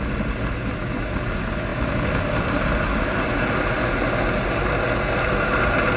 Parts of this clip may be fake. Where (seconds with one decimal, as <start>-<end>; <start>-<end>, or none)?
none